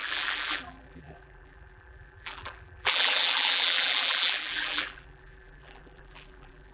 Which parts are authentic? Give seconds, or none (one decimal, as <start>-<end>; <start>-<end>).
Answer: none